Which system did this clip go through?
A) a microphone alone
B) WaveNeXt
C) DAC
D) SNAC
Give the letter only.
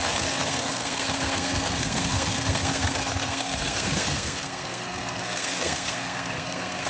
D